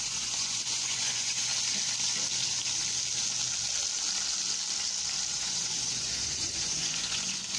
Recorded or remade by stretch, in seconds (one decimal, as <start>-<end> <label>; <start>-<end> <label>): 0.0-1.5 remade; 1.5-5.3 recorded; 5.3-7.6 remade

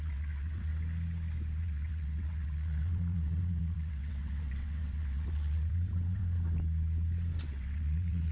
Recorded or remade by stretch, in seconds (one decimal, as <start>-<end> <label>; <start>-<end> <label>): 0.0-0.7 remade; 0.7-1.6 recorded; 1.6-6.2 remade; 6.2-7.5 recorded; 7.5-8.3 remade

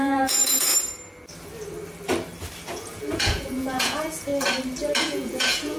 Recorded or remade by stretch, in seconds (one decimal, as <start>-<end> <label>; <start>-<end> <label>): 0.0-0.7 remade; 0.7-2.7 recorded; 2.7-4.3 remade; 4.3-5.0 recorded; 5.0-5.8 remade

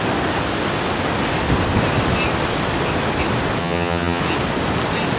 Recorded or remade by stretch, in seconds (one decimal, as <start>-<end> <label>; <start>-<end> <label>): 0.0-3.6 recorded; 3.6-4.2 remade; 4.2-5.2 recorded

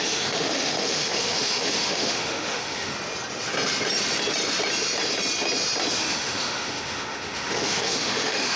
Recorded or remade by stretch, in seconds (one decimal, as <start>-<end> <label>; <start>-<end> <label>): 0.0-2.9 remade; 2.9-6.0 recorded; 6.0-8.6 remade

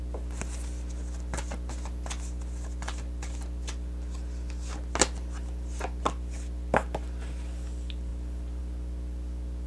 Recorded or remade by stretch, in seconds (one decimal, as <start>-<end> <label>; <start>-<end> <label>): 0.0-9.7 recorded

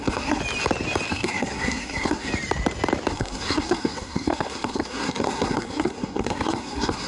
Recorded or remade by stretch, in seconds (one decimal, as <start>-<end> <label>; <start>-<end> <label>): 0.0-0.4 remade; 0.4-1.1 recorded; 1.1-2.3 remade; 2.3-3.1 recorded; 3.1-7.1 remade

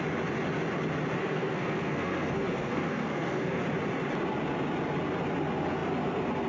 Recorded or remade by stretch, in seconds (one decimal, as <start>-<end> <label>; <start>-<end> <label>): 0.0-1.2 recorded; 1.2-3.6 remade; 3.6-6.5 recorded